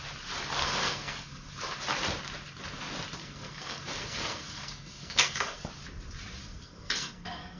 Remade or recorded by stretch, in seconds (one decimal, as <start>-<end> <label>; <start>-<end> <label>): 0.0-0.6 recorded; 0.6-1.5 remade; 1.5-3.2 recorded; 3.2-5.7 remade; 5.7-6.4 recorded; 6.4-7.6 remade